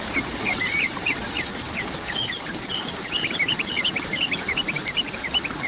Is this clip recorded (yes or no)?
no